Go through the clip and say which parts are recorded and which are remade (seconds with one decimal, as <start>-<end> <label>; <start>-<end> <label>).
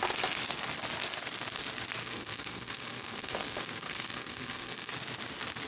0.0-2.0 recorded; 2.0-4.9 remade; 4.9-5.7 recorded